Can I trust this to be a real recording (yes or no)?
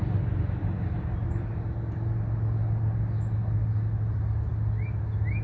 yes